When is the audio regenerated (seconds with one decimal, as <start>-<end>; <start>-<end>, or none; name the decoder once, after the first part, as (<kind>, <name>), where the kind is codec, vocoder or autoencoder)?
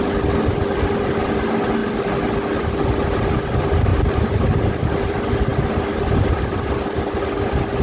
1.8-2.6 (vocoder, BigVGAN v2); 3.9-5.0